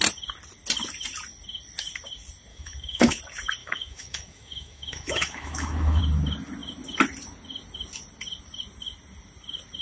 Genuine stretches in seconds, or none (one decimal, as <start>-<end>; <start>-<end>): 0.0-2.5; 3.2-3.6; 6.0-9.8